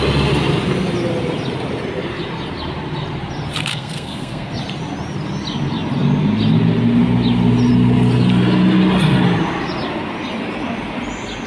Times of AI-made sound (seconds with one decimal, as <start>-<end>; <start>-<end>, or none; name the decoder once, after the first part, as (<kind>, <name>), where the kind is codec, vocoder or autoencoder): 3.7-4.5 (codec, SNAC)